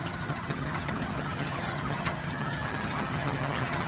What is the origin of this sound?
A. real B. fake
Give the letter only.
B